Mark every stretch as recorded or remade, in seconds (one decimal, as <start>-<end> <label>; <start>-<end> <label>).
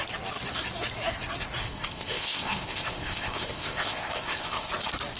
0.0-1.6 recorded; 1.6-4.7 remade; 4.7-5.2 recorded